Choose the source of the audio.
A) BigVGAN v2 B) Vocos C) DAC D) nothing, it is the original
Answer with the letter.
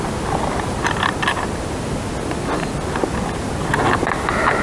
D